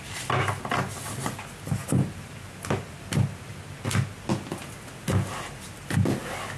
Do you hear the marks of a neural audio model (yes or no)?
no